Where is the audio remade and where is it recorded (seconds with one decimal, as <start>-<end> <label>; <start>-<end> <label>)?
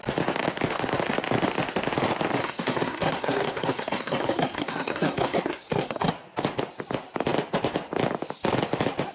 0.0-2.4 recorded; 2.4-6.1 remade; 6.1-9.1 recorded